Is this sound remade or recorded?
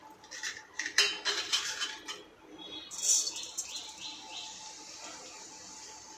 recorded